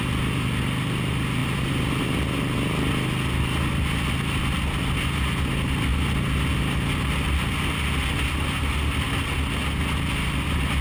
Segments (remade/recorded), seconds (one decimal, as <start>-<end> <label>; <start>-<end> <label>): 0.0-1.4 recorded; 1.4-2.0 remade; 2.0-10.8 recorded